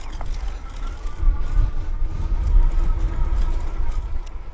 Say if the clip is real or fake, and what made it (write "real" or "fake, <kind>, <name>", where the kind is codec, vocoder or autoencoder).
real